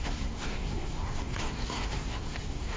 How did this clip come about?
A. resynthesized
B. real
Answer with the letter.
A